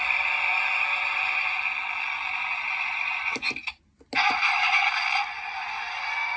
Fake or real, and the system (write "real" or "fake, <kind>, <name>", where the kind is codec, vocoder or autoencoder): real